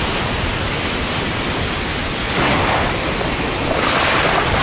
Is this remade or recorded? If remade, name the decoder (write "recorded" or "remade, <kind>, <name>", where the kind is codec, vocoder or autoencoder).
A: recorded